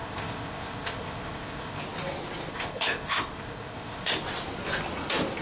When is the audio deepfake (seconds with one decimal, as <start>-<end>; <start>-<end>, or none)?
0.0-1.8; 2.5-4.2